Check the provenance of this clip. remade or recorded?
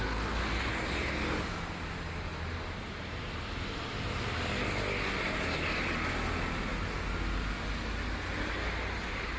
recorded